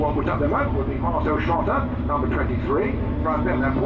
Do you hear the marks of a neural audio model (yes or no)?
no